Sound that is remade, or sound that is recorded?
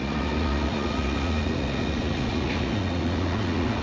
remade